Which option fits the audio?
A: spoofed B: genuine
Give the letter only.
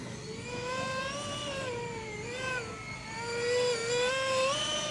B